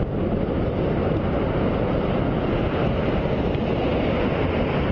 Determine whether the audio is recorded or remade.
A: recorded